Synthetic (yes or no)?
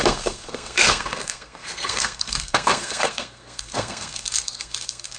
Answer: yes